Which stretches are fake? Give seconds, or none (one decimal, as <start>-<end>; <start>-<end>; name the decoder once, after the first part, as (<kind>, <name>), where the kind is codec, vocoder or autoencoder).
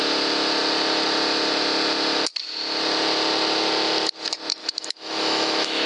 4.6-5.9 (autoencoder, DAC-VAE)